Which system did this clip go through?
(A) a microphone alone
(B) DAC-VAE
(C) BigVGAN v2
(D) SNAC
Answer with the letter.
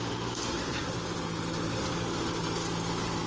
A